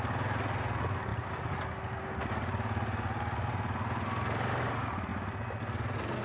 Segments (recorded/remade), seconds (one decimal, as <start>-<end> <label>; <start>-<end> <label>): 0.0-5.1 recorded; 5.1-6.2 remade